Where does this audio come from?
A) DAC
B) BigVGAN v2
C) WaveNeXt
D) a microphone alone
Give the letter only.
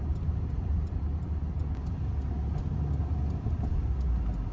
D